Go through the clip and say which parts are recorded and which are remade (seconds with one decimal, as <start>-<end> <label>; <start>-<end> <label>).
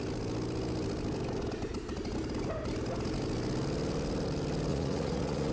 0.0-4.7 recorded; 4.7-5.5 remade